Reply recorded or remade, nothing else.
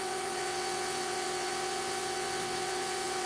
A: remade